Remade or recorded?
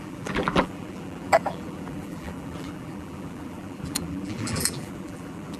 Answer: remade